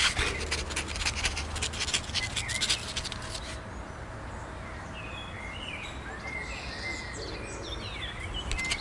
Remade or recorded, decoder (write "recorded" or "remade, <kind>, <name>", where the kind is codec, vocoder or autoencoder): recorded